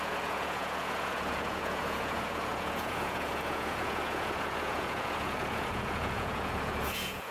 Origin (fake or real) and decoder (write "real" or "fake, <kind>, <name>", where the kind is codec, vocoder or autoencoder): fake, vocoder, Vocos